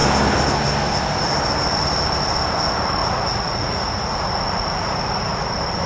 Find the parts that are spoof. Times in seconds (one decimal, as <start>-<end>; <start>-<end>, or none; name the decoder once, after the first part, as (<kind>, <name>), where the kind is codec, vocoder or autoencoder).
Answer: 3.0-5.5 (vocoder, Vocos)